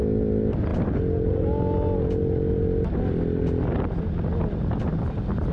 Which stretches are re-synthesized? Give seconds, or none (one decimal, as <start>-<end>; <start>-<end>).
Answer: none

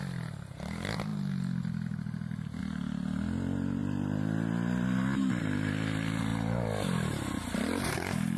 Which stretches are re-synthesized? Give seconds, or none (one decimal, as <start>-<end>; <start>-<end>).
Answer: 3.8-5.4; 6.3-8.4

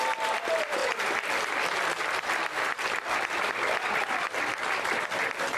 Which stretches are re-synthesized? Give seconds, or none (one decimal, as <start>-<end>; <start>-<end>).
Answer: 0.0-0.8; 4.2-5.6

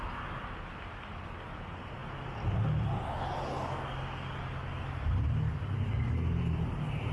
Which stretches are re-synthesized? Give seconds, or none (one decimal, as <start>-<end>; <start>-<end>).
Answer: none

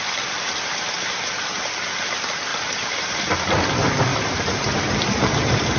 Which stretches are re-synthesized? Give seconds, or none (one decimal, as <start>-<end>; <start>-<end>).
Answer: 2.5-3.3; 4.1-5.8

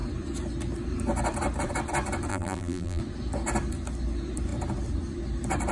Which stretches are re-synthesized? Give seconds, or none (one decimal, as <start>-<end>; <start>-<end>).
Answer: 2.3-3.0

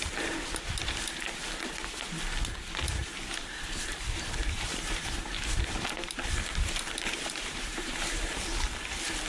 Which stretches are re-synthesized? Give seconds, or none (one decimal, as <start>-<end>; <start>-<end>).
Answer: 3.0-8.2

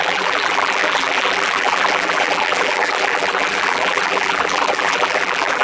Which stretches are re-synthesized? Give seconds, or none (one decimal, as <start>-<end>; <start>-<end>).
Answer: 0.0-5.6